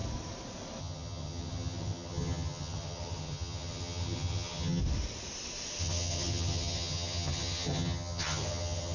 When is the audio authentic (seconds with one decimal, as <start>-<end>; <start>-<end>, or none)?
0.0-0.8; 4.8-5.8